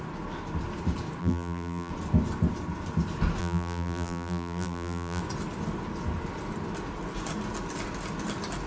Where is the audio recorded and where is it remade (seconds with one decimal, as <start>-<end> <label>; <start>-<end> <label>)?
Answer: 0.0-1.2 recorded; 1.2-1.9 remade; 1.9-3.4 recorded; 3.4-5.2 remade; 5.2-8.7 recorded